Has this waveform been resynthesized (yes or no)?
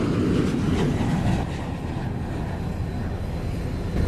no